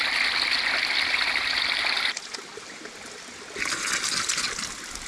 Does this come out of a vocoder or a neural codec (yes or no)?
no